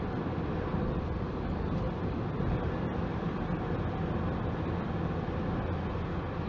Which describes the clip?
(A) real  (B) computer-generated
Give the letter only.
A